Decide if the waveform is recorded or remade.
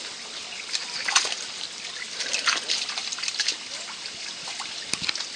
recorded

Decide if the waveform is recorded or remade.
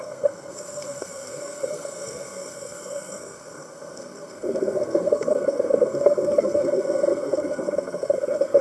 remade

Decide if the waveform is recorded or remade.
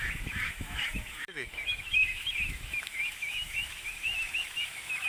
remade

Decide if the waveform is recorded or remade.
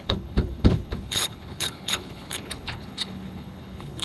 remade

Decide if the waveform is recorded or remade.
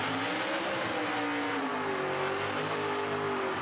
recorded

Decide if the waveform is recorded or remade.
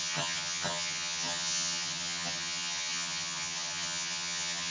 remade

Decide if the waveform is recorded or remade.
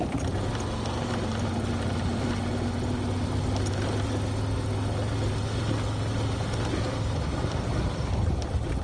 recorded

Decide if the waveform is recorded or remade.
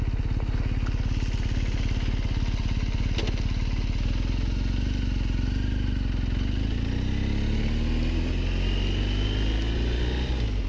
recorded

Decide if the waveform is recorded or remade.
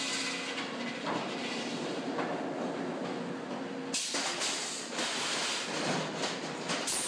recorded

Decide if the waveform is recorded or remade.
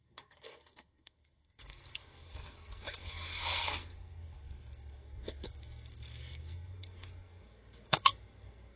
remade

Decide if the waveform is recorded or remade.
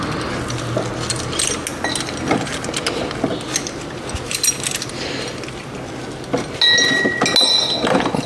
recorded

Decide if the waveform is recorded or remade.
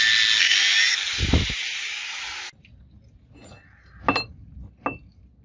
recorded